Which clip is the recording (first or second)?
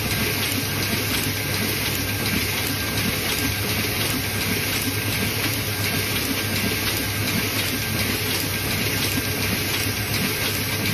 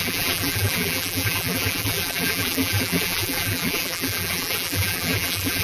first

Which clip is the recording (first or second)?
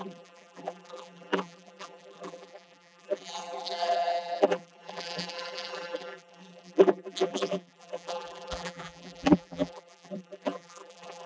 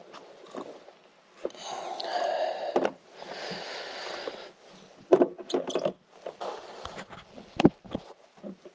second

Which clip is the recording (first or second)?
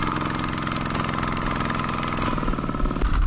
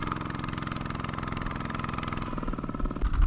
first